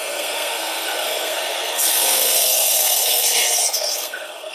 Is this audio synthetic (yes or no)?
yes